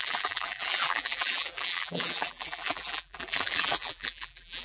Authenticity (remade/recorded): remade